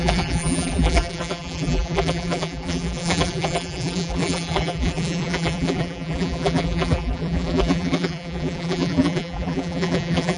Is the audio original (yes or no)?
no